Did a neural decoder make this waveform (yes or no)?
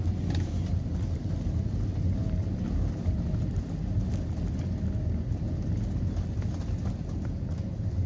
no